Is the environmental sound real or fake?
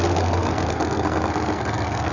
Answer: fake